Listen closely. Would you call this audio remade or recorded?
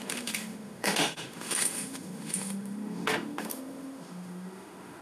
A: remade